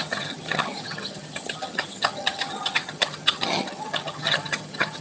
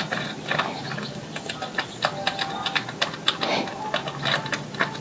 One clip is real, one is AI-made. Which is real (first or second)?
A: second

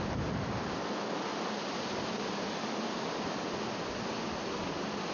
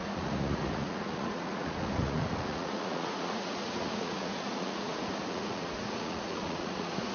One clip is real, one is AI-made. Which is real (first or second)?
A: first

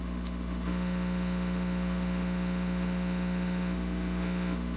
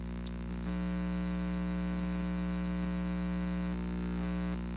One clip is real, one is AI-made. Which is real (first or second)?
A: second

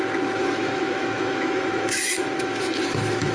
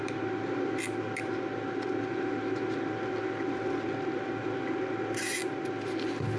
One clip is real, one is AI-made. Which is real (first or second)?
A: second